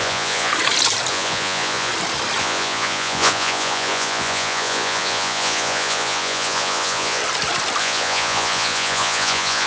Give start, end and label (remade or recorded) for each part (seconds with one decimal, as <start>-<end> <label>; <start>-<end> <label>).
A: 0.0-0.5 remade; 0.5-1.1 recorded; 1.1-1.9 remade; 1.9-2.4 recorded; 2.4-7.2 remade; 7.2-7.8 recorded; 7.8-9.7 remade